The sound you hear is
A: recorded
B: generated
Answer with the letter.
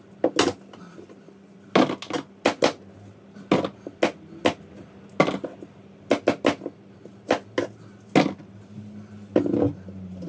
A